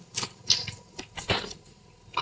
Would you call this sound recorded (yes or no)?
yes